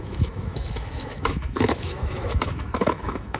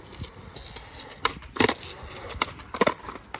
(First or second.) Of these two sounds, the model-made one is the first